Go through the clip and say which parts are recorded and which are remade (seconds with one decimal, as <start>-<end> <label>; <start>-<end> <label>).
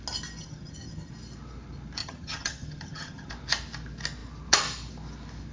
0.0-0.4 recorded; 0.4-1.1 remade; 1.1-2.0 recorded; 2.0-3.3 remade; 3.3-5.5 recorded